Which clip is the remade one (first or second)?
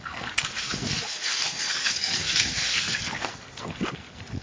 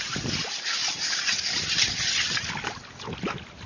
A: first